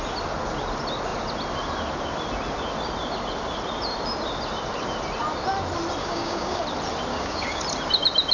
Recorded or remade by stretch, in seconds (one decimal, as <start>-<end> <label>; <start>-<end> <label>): 0.0-6.0 recorded; 6.0-6.6 remade; 6.6-7.1 recorded; 7.1-7.6 remade; 7.6-8.3 recorded